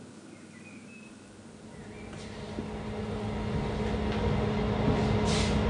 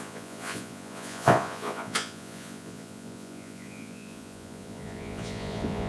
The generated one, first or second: second